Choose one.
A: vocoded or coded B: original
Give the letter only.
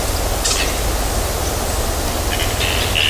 B